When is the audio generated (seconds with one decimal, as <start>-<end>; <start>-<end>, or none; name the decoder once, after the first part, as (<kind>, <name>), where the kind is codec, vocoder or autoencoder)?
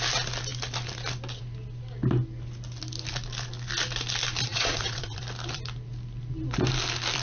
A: 4.5-5.2 (vocoder, Vocos)